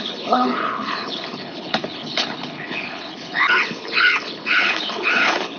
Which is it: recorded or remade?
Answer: remade